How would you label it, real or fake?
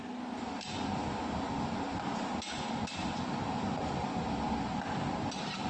real